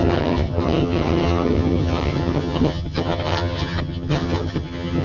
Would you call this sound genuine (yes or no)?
no